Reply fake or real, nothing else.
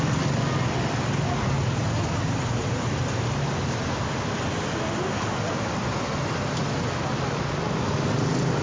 real